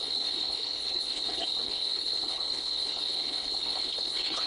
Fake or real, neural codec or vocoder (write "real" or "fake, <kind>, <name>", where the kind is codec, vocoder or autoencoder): fake, codec, HILCodec